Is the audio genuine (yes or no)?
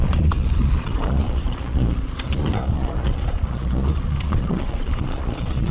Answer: no